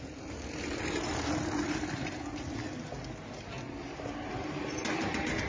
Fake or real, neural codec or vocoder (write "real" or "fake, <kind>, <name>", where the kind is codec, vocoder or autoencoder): real